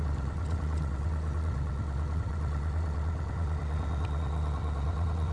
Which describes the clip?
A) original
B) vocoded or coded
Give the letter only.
B